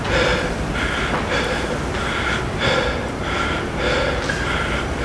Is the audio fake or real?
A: real